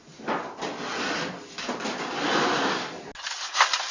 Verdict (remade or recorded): recorded